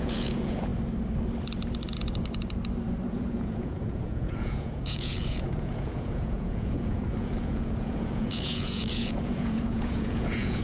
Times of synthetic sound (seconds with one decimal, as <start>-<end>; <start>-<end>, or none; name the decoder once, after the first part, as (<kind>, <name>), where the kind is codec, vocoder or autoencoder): 0.0-0.7 (vocoder, Vocos); 3.1-10.6